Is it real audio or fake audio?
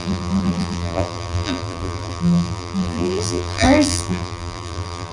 fake